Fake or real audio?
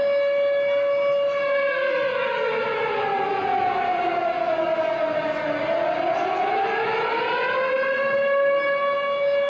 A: real